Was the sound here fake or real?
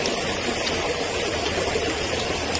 fake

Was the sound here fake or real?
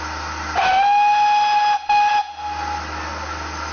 real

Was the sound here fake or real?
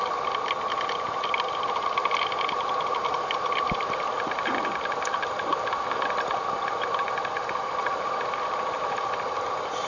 real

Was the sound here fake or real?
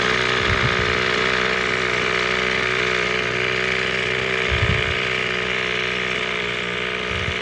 fake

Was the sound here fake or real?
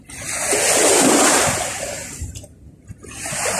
real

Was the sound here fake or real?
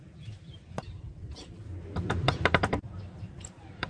fake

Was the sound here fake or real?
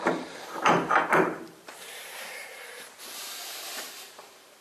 fake